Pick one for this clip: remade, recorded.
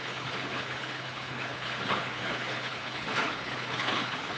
remade